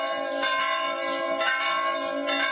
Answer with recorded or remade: recorded